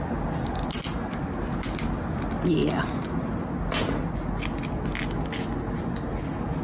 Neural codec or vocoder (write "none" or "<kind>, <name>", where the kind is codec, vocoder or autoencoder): none